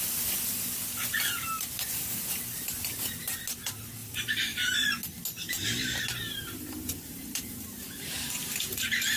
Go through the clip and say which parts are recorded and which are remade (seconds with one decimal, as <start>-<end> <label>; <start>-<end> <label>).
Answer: 0.0-4.0 recorded; 4.0-4.9 remade; 4.9-5.4 recorded; 5.4-9.2 remade

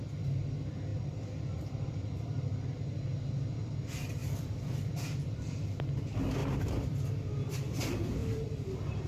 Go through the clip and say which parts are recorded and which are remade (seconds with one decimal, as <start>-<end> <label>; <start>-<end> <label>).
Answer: 0.0-0.9 recorded; 0.9-2.7 remade; 2.7-4.2 recorded; 4.2-5.5 remade; 5.5-6.4 recorded; 6.4-7.3 remade; 7.3-8.2 recorded; 8.2-8.7 remade; 8.7-9.1 recorded

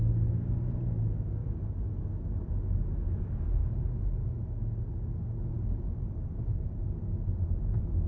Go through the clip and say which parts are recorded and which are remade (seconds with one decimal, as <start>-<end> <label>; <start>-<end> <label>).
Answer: 0.0-1.4 recorded; 1.4-2.0 remade; 2.0-8.1 recorded

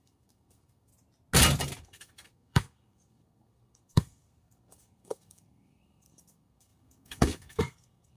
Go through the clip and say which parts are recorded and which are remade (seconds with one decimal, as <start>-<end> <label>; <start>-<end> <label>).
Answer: 0.0-0.9 remade; 0.9-1.8 recorded; 1.8-8.2 remade

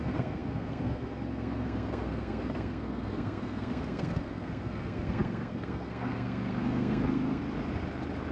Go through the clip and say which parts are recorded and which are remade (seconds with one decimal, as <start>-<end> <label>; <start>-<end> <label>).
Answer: 0.0-7.4 remade; 7.4-8.3 recorded